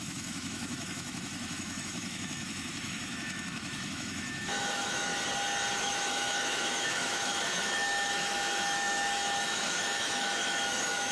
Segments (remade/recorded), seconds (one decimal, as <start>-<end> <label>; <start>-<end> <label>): 0.0-5.1 remade; 5.1-5.8 recorded; 5.8-11.1 remade